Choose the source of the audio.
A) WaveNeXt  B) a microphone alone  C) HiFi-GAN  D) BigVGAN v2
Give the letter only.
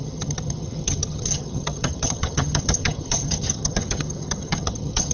C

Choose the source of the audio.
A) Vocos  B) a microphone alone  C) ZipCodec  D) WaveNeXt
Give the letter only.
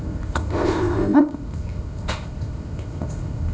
C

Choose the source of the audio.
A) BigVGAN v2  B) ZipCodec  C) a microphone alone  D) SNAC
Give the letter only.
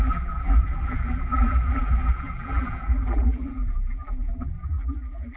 A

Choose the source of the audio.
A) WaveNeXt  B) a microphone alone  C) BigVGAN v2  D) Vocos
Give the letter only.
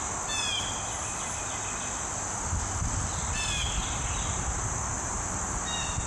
B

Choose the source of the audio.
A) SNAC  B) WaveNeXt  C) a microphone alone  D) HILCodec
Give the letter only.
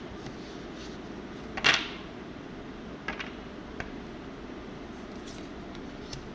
C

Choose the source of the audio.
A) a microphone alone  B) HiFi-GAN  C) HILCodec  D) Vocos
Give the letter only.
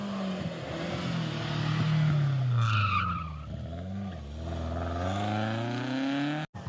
A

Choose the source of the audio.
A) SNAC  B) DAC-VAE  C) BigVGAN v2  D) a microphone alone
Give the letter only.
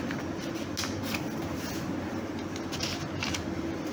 D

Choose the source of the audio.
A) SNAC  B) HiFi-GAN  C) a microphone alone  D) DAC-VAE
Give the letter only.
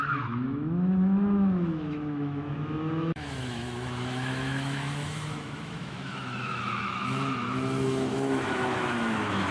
D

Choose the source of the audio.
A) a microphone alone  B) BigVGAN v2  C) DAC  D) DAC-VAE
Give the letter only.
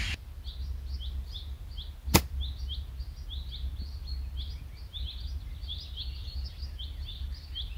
A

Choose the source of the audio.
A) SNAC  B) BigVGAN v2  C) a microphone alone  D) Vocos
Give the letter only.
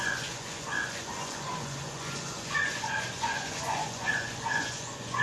D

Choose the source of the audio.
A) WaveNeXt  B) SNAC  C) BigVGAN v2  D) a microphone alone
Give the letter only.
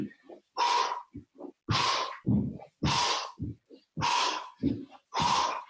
D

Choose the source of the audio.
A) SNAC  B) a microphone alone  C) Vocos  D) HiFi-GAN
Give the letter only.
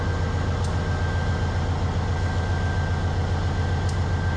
B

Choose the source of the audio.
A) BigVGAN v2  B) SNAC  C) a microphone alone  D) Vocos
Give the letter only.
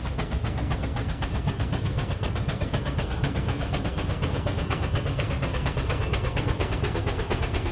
B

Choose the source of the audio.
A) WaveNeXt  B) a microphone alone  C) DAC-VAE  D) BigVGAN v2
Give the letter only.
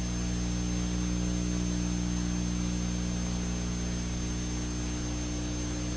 B